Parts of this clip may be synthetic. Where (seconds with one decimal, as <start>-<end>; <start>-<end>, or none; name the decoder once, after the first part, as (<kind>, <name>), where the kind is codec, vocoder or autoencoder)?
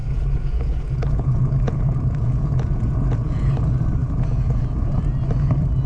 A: 0.0-3.5 (vocoder, Vocos); 4.0-5.0